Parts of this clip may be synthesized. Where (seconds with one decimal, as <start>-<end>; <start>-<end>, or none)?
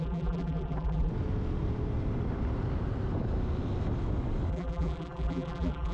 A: 0.0-1.1; 4.5-5.9